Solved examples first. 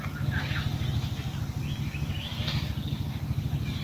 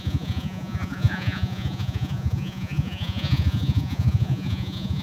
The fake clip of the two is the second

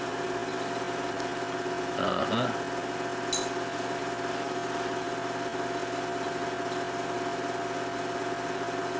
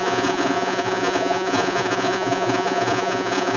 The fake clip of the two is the second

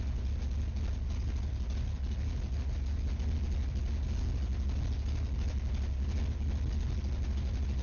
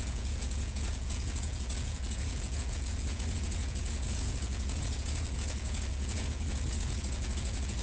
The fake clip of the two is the second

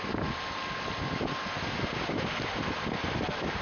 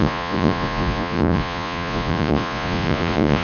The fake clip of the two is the second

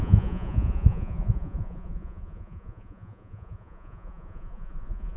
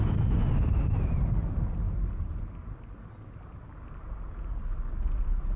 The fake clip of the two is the first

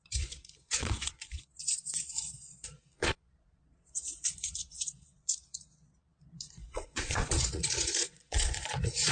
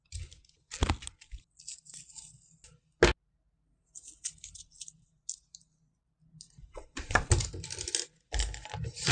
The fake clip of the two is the first